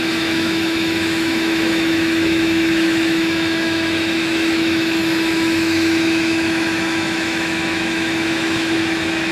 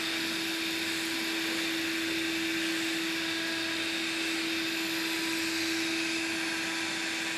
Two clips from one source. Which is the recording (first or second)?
second